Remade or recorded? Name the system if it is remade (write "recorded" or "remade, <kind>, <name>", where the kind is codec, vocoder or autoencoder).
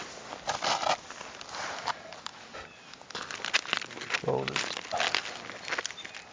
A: recorded